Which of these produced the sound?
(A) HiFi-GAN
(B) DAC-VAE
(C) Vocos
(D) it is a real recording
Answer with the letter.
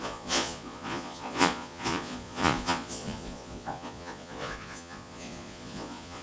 C